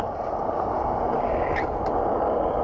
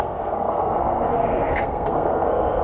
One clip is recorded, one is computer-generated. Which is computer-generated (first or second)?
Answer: second